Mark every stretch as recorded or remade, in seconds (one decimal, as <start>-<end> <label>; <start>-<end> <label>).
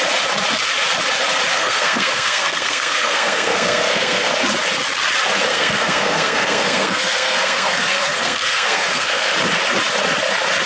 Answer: 0.0-1.5 recorded; 1.5-4.3 remade; 4.3-5.5 recorded; 5.5-9.3 remade; 9.3-10.7 recorded